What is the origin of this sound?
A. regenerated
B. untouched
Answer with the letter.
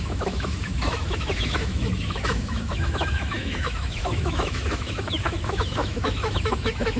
A